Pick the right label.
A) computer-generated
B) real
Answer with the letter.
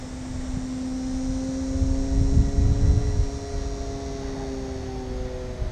B